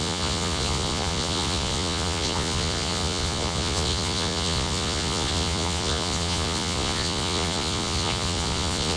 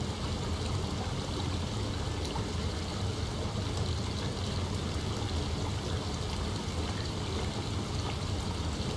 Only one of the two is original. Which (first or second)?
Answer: second